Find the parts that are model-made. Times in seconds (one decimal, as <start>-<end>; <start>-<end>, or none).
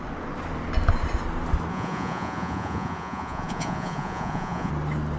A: 1.7-4.7